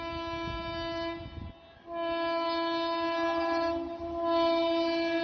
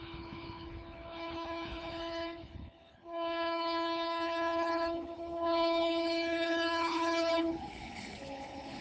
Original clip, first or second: first